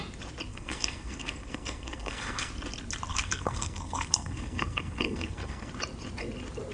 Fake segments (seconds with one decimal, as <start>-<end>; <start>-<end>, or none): 0.5-2.5; 3.1-5.7